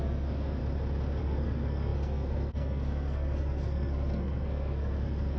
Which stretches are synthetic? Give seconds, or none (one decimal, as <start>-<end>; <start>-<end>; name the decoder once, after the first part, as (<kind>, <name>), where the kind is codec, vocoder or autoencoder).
0.0-0.6 (codec, SNAC); 1.2-5.4